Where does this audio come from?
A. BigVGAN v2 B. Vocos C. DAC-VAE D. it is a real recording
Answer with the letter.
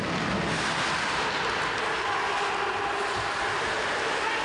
D